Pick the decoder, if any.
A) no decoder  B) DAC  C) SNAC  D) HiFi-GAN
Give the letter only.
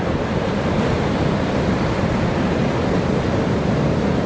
A